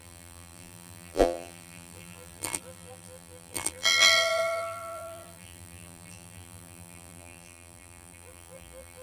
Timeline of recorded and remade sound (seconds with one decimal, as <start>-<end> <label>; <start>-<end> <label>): 0.0-9.0 remade